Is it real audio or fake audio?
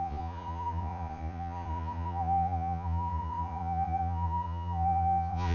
fake